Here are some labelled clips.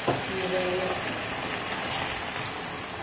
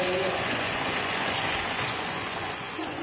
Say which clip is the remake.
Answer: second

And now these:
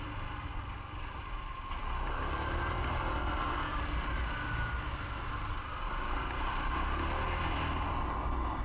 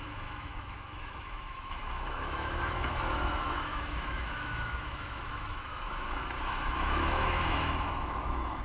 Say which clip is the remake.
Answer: second